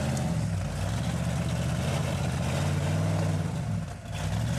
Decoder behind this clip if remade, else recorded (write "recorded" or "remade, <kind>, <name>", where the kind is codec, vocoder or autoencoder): recorded